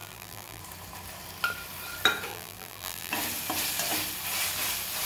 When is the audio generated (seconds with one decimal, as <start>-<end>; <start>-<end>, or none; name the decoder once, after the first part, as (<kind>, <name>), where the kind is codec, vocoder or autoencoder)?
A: 0.0-0.6 (vocoder, BigVGAN v2); 2.3-3.1